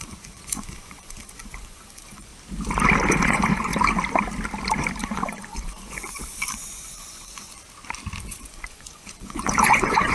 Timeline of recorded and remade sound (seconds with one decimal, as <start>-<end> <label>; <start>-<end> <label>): 0.0-2.3 remade; 2.3-3.1 recorded; 3.1-3.7 remade; 3.7-5.0 recorded; 5.0-7.6 remade; 7.6-8.2 recorded; 8.2-10.1 remade